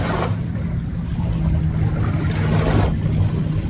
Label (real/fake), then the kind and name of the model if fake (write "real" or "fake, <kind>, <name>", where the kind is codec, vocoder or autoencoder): real